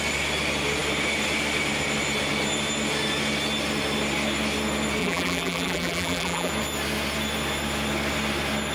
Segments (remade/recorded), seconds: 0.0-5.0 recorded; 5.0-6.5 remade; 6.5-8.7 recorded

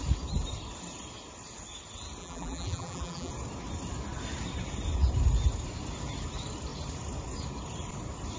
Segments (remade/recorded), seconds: 0.0-2.2 recorded; 2.2-3.3 remade; 3.3-8.4 recorded

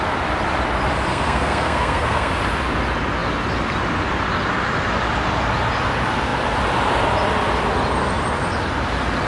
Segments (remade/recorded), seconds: 0.0-1.1 recorded; 1.1-2.3 remade; 2.3-9.3 recorded

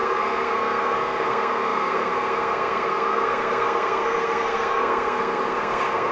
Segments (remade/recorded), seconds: 0.0-6.1 remade

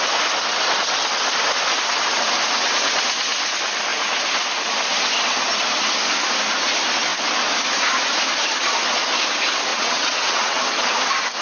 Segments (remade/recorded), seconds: 0.0-9.7 recorded; 9.7-10.6 remade; 10.6-11.4 recorded

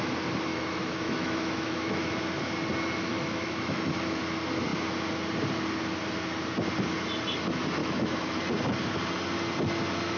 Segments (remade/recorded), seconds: 0.0-0.5 recorded; 0.5-2.0 remade; 2.0-3.1 recorded; 3.1-4.2 remade; 4.2-7.8 recorded; 7.8-8.4 remade; 8.4-10.2 recorded

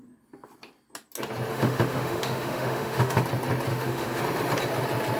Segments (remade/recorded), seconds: 0.0-1.5 recorded; 1.5-3.2 remade; 3.2-3.7 recorded; 3.7-4.2 remade; 4.2-5.2 recorded